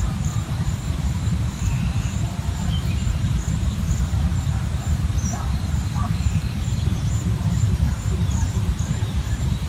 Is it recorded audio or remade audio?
remade